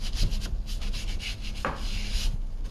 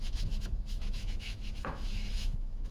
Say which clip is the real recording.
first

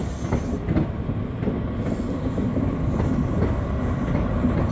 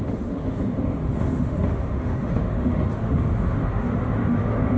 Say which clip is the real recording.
first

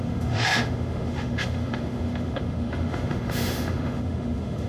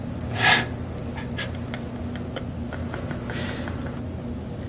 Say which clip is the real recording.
second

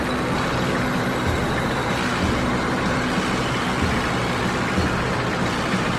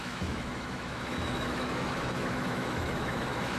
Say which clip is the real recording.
first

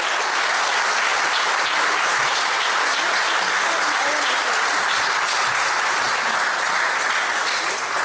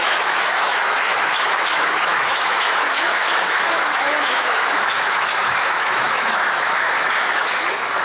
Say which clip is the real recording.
first